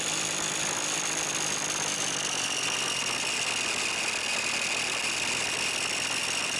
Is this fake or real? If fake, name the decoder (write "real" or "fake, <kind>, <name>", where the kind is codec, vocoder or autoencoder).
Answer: fake, vocoder, BigVGAN v2